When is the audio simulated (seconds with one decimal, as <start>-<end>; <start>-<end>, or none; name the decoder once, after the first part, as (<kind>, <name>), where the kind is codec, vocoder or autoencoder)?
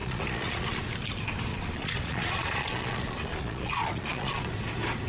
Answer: 0.0-0.8 (vocoder, Vocos); 1.5-4.4